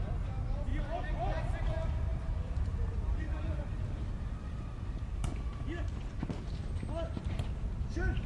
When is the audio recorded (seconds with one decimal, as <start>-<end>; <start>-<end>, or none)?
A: 0.0-8.3